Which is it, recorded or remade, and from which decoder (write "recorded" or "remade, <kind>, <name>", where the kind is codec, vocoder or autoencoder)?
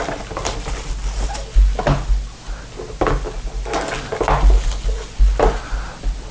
recorded